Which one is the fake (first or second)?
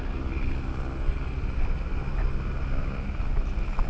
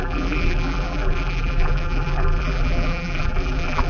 second